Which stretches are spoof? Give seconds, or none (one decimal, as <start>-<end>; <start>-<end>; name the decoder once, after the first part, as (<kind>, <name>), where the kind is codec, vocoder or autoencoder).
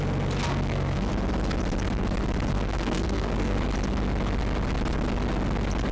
0.5-1.1 (codec, SNAC); 2.5-3.6